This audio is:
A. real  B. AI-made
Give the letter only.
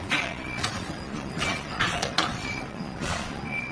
B